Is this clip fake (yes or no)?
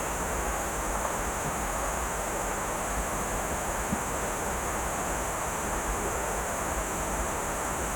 yes